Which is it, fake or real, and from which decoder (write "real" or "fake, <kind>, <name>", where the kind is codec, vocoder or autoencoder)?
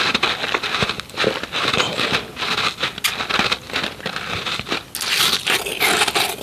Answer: real